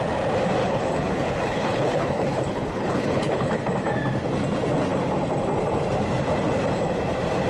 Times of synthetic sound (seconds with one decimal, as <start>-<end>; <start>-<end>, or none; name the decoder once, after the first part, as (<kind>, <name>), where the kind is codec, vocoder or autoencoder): 0.6-3.6 (codec, HILCodec)